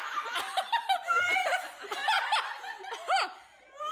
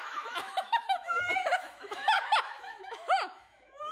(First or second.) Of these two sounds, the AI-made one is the second